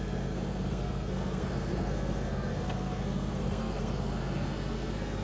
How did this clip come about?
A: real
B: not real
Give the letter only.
B